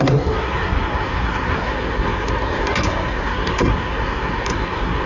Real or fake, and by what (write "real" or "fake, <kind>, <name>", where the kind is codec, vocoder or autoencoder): fake, codec, SNAC